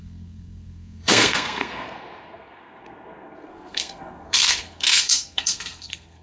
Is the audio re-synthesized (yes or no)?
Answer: yes